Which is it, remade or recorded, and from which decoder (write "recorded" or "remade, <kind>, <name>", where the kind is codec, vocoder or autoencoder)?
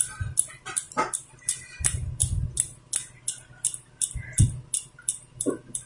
recorded